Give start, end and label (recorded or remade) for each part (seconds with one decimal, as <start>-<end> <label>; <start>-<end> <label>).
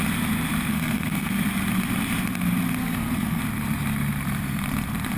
0.0-0.7 recorded; 0.7-1.3 remade; 1.3-2.8 recorded; 2.8-3.4 remade; 3.4-5.2 recorded